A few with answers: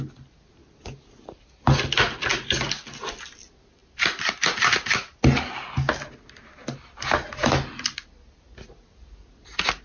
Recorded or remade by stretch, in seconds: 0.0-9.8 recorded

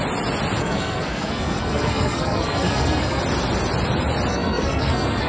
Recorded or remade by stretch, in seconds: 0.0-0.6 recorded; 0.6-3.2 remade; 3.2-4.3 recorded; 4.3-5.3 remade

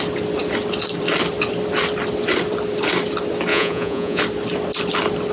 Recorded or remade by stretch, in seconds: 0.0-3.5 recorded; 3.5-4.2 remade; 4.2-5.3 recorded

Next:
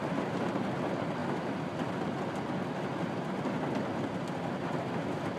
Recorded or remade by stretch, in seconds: 0.0-5.4 recorded

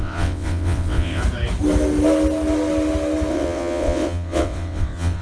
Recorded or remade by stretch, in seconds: 0.0-1.2 remade; 1.2-3.3 recorded; 3.3-5.2 remade

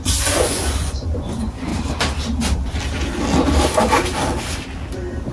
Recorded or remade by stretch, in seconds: 0.0-1.7 remade; 1.7-5.3 recorded